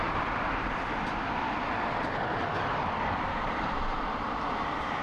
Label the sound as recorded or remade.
remade